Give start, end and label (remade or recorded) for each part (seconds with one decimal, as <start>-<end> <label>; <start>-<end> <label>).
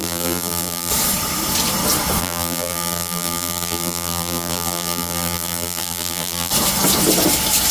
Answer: 0.0-0.9 remade; 0.9-2.2 recorded; 2.2-6.5 remade; 6.5-7.7 recorded